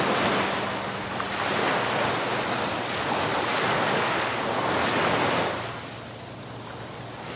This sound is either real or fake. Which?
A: real